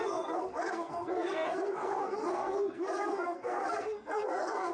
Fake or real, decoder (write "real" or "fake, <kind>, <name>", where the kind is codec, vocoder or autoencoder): fake, codec, SNAC